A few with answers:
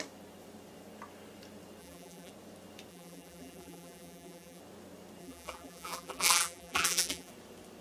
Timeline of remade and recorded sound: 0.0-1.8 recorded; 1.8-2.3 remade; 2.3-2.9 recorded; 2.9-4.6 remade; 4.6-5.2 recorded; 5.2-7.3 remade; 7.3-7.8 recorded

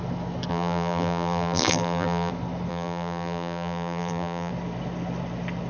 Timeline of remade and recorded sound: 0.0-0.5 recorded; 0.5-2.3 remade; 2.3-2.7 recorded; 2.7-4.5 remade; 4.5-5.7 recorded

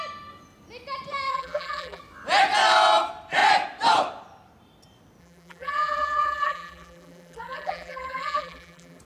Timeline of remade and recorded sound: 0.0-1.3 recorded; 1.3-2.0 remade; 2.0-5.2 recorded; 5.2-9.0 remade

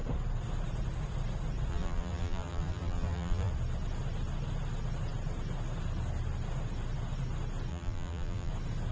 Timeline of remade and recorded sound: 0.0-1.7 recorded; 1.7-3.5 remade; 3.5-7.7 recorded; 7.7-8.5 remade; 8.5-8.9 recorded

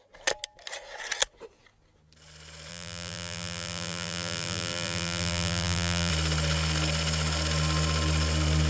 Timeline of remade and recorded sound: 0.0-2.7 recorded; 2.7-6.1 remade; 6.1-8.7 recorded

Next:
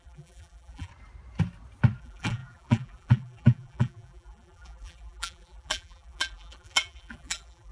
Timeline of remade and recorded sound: 0.0-0.9 remade; 0.9-2.0 recorded; 2.0-7.7 remade

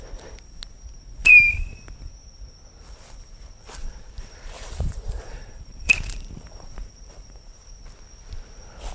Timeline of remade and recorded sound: 0.0-1.3 recorded; 1.3-1.8 remade; 1.8-3.8 recorded; 3.8-7.8 remade; 7.8-8.9 recorded

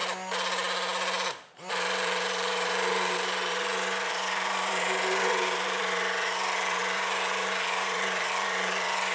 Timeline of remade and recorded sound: 0.0-1.7 recorded; 1.7-9.1 remade